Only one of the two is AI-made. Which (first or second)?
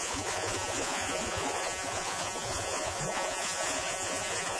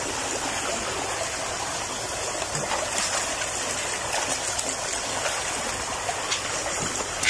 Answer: first